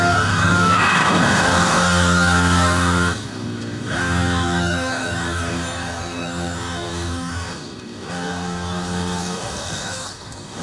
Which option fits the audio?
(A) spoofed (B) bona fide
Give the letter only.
A